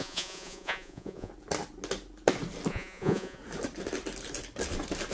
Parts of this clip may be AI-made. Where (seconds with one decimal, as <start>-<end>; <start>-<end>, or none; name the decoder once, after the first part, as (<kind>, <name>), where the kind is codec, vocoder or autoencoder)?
0.0-1.3 (vocoder, Vocos); 2.7-3.4